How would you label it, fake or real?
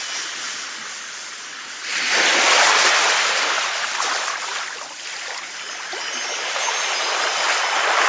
real